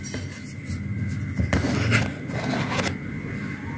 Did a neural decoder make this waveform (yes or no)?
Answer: no